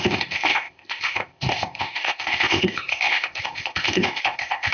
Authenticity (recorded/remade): remade